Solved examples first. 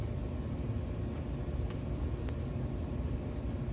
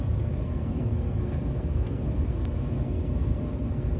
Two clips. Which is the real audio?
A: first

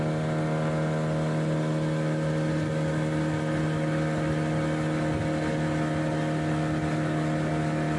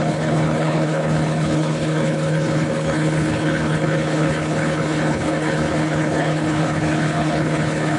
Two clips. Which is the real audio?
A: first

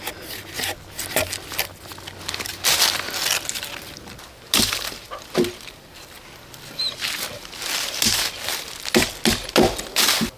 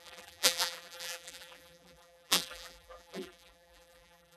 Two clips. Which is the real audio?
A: first